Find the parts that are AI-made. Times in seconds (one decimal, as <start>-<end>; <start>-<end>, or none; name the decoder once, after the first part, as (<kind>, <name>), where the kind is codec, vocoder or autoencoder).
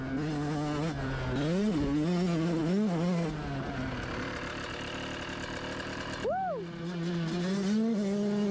none